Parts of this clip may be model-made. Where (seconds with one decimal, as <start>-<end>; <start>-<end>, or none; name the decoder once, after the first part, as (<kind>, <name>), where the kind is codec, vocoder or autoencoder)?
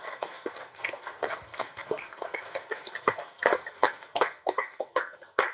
0.0-5.5 (codec, SNAC)